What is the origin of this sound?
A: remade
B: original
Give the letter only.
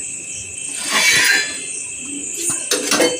B